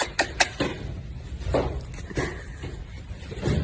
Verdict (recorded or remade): recorded